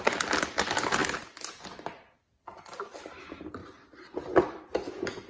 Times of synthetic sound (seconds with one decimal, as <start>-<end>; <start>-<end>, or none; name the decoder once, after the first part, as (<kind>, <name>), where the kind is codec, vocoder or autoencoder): 3.6-4.2 (vocoder, BigVGAN v2)